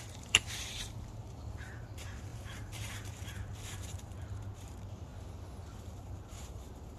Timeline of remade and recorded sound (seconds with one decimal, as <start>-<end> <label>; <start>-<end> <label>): 0.0-5.1 remade; 5.1-6.0 recorded; 6.0-7.0 remade